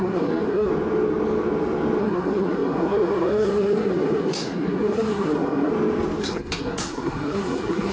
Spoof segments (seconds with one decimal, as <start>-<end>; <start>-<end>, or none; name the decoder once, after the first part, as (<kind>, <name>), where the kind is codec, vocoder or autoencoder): 0.0-0.7 (codec, SNAC); 2.0-5.7; 6.2-7.9